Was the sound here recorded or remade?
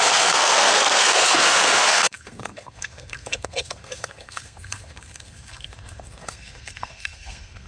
remade